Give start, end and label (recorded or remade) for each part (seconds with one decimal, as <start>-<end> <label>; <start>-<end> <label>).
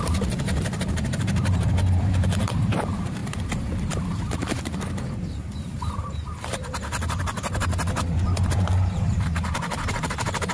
0.0-10.5 remade